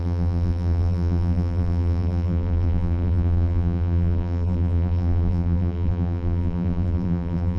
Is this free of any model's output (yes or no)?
no